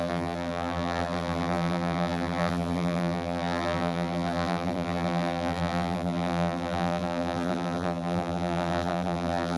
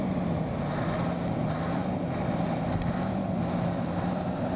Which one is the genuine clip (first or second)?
second